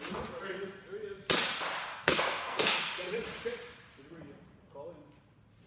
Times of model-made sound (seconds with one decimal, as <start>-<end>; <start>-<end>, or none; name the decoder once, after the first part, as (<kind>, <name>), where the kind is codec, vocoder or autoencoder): 1.9-2.9 (codec, SNAC)